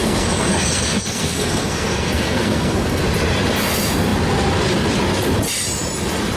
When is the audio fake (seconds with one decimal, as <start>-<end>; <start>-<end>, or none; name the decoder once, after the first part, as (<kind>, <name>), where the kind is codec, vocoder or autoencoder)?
0.0-3.0 (codec, SNAC)